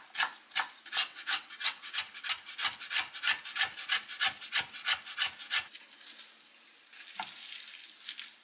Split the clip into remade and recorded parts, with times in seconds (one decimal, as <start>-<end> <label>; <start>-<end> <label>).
0.0-1.0 recorded; 1.0-2.0 remade; 2.0-8.4 recorded